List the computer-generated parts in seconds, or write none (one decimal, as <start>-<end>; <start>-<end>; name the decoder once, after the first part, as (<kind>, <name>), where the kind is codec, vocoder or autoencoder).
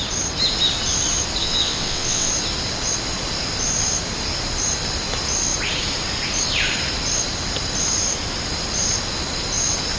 1.4-2.3 (vocoder, WaveNeXt)